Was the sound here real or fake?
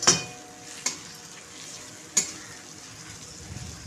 real